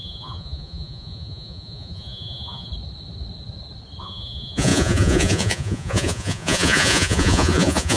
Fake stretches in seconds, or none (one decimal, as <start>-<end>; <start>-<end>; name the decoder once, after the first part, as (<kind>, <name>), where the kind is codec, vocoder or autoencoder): 0.0-2.7 (vocoder, Vocos); 4.0-8.0